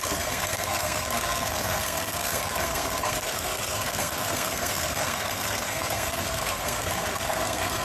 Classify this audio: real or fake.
fake